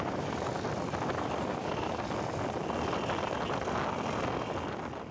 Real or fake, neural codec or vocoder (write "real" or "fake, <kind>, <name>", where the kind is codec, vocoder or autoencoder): real